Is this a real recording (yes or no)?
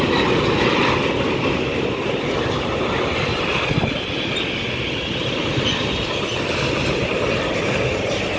yes